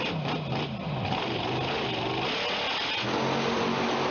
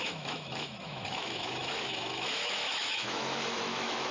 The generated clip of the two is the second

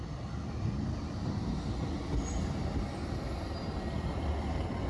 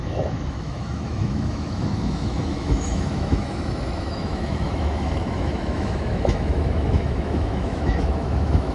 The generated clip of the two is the second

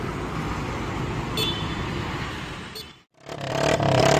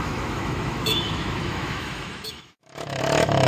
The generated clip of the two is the second